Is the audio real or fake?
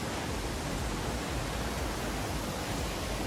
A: real